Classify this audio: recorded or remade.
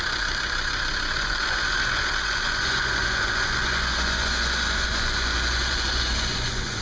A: remade